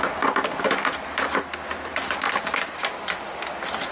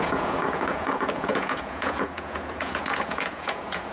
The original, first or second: first